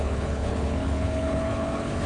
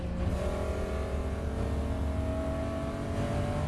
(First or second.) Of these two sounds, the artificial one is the first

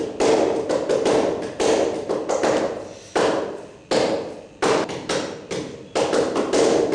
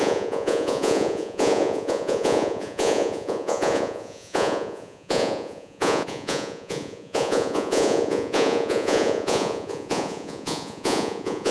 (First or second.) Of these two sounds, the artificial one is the second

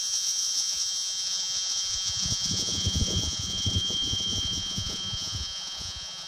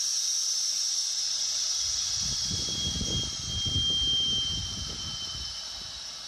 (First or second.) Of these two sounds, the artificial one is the first